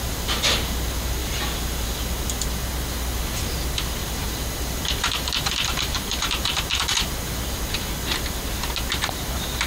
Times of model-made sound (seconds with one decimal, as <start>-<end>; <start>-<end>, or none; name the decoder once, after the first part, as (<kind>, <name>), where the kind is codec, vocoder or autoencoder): 1.2-2.7 (vocoder, BigVGAN v2); 4.0-7.8